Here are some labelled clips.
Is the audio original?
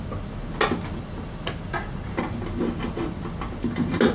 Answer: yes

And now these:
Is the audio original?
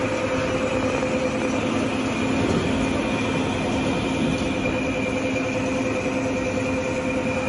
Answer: yes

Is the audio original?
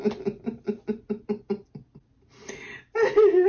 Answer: yes